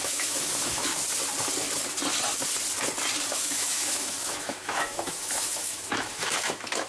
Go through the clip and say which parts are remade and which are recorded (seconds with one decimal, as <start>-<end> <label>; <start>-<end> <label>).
0.0-0.9 remade; 0.9-3.3 recorded; 3.3-6.9 remade

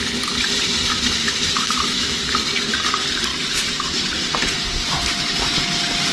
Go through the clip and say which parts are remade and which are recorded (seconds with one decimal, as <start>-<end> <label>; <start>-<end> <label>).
0.0-1.2 recorded; 1.2-2.2 remade; 2.2-6.1 recorded

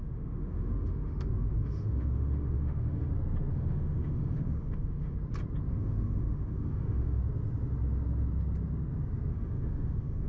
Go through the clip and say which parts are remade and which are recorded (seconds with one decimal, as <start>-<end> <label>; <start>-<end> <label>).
0.0-3.1 remade; 3.1-3.5 recorded; 3.5-5.2 remade; 5.2-5.7 recorded; 5.7-7.2 remade; 7.2-9.3 recorded; 9.3-10.3 remade

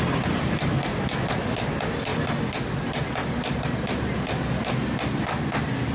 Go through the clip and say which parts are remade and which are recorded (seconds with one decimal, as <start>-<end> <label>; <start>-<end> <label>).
0.0-5.9 recorded

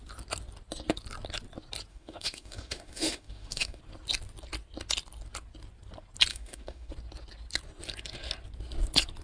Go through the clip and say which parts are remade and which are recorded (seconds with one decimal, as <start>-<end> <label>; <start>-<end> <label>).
0.0-1.9 recorded; 1.9-3.8 remade; 3.8-6.3 recorded; 6.3-6.9 remade; 6.9-9.2 recorded

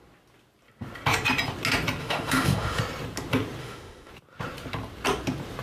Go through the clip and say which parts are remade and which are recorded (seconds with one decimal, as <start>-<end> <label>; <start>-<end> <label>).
0.0-2.0 recorded; 2.0-2.8 remade; 2.8-3.6 recorded; 3.6-4.1 remade; 4.1-5.6 recorded

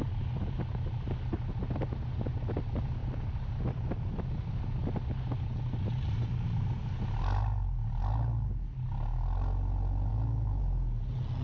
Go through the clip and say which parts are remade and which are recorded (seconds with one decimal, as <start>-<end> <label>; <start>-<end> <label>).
0.0-10.1 recorded; 10.1-10.6 remade; 10.6-11.4 recorded

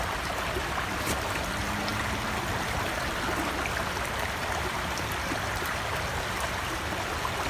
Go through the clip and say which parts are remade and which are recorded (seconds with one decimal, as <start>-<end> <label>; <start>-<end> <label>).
0.0-7.5 recorded